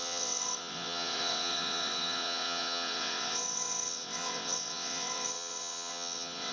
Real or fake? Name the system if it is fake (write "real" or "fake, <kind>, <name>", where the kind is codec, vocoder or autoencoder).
fake, vocoder, WaveNeXt